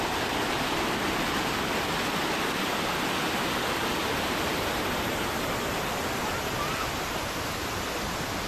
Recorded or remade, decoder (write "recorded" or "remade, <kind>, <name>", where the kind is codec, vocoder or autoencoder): recorded